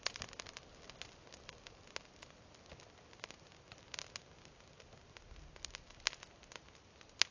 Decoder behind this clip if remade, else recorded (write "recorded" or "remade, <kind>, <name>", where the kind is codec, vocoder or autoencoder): recorded